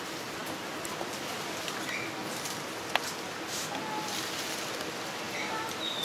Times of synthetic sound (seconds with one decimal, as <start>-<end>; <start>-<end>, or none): 2.2-2.8